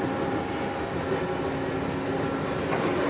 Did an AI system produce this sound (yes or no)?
no